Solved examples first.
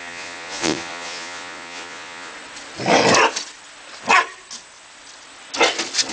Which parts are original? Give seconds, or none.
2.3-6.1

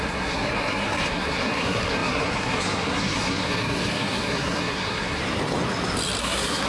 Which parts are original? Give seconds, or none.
5.2-6.2

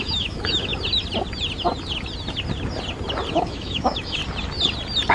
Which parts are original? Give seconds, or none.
0.7-3.3; 4.2-5.1

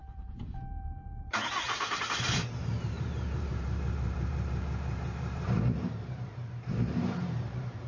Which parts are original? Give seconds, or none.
none

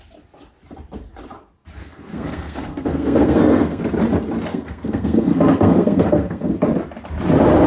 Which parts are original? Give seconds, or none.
0.0-1.8; 3.8-4.5; 6.5-7.7

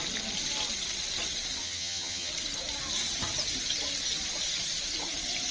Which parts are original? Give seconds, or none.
0.0-1.6; 2.3-5.5

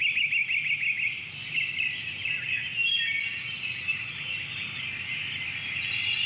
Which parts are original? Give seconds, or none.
0.0-6.3

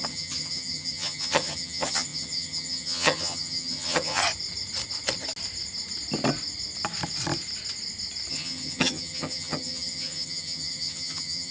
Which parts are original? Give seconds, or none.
4.2-8.3